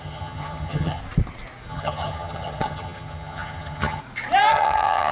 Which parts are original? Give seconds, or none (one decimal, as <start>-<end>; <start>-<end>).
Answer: 1.0-1.7; 4.0-4.5